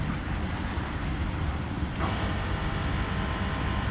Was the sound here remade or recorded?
recorded